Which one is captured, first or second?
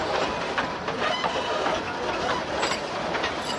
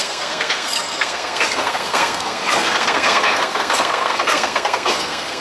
first